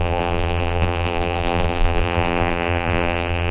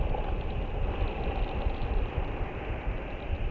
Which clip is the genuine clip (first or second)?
second